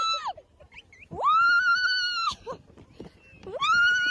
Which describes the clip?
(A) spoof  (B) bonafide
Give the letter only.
B